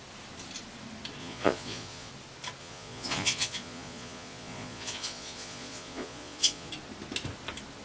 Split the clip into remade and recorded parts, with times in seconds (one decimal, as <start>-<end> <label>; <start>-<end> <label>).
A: 0.0-1.2 recorded; 1.2-2.1 remade; 2.1-2.6 recorded; 2.6-6.7 remade; 6.7-7.8 recorded